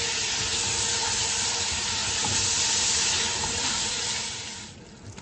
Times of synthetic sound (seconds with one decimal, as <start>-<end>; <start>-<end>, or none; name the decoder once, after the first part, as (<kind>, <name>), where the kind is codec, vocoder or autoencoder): none